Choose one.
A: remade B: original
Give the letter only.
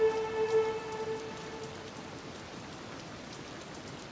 B